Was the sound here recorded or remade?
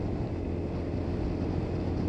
recorded